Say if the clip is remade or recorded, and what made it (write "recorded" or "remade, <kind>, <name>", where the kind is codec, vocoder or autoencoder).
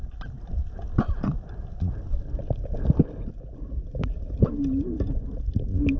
recorded